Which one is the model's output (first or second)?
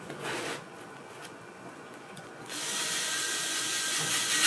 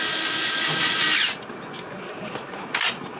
first